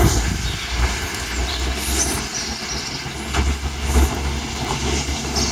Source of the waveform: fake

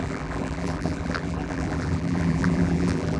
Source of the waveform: fake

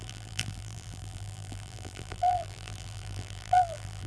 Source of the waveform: fake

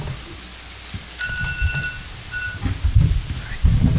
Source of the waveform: real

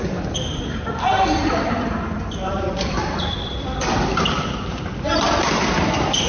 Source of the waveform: fake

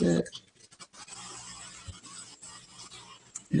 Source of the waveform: real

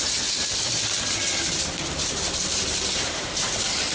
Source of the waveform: real